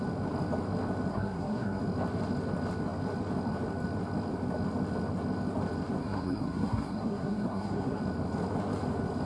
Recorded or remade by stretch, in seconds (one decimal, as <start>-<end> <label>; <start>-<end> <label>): 0.0-1.1 recorded; 1.1-1.8 remade; 1.8-6.0 recorded; 6.0-8.0 remade; 8.0-9.3 recorded